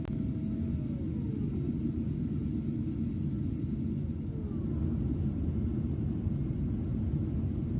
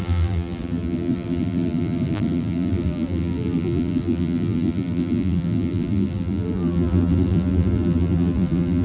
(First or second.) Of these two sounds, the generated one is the second